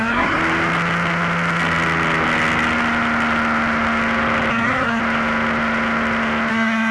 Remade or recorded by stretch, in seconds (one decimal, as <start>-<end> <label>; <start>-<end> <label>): 0.0-0.4 remade; 0.4-4.5 recorded; 4.5-5.0 remade; 5.0-6.5 recorded; 6.5-6.9 remade